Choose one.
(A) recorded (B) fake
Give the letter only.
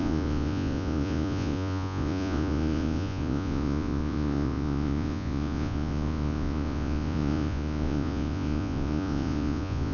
B